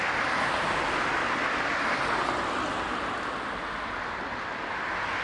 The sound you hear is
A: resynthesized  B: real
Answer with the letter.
B